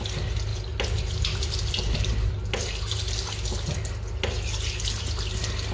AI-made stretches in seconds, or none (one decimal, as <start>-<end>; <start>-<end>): none